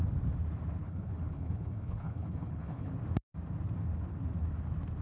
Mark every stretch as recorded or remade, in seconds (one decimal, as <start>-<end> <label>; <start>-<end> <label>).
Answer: 0.0-0.8 recorded; 0.8-2.9 remade; 2.9-5.0 recorded

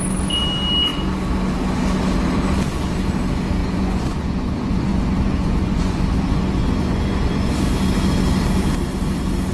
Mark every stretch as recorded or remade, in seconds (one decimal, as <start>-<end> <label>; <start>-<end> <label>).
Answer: 0.0-3.6 recorded; 3.6-7.5 remade; 7.5-9.5 recorded

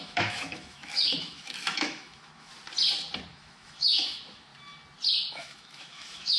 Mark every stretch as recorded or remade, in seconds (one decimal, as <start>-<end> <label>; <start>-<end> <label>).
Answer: 0.0-2.5 remade; 2.5-3.3 recorded; 3.3-4.5 remade; 4.5-5.3 recorded; 5.3-6.4 remade

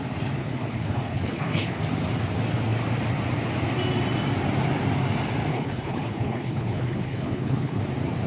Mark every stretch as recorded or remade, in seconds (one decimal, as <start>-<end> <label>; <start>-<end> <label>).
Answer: 0.0-0.4 recorded; 0.4-1.8 remade; 1.8-5.5 recorded; 5.5-7.8 remade; 7.8-8.3 recorded